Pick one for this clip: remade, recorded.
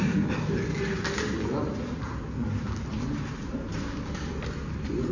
recorded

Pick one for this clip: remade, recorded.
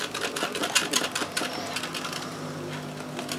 recorded